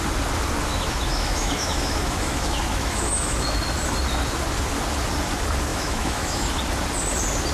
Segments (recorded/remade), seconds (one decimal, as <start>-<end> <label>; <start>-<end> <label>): 0.0-0.7 recorded; 0.7-3.6 remade; 3.6-5.7 recorded; 5.7-6.5 remade; 6.5-7.5 recorded